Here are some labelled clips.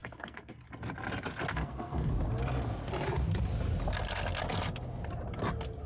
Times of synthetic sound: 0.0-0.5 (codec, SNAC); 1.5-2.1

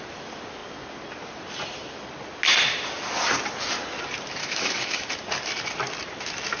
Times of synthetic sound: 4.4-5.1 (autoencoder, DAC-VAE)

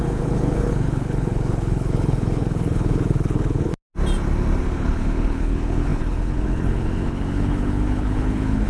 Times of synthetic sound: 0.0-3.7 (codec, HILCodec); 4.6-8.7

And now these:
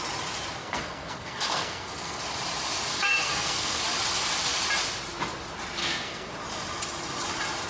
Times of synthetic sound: 0.6-2.2 (codec, SNAC); 2.9-3.8; 5.8-6.3

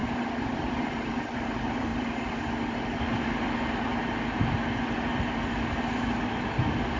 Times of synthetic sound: none

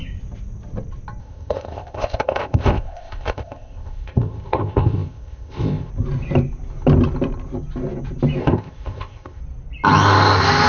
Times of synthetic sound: 1.2-5.9 (codec, ZipCodec); 8.4-9.4